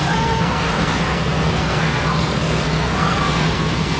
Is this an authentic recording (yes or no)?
no